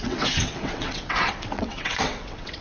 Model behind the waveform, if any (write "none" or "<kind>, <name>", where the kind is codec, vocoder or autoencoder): vocoder, WaveNeXt